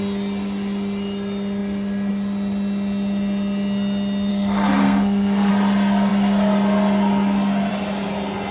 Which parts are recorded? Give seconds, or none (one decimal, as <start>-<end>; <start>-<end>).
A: 0.0-4.3; 5.5-8.5